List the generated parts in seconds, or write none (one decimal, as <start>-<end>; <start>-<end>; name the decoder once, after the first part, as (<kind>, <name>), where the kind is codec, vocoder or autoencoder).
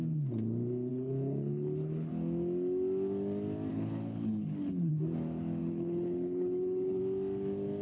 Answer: 0.9-2.1 (codec, HILCodec); 3.7-4.9; 5.6-7.0